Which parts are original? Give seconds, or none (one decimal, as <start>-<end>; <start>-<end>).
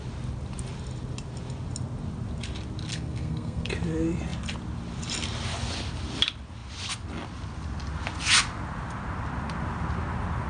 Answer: 0.0-2.9; 3.7-10.5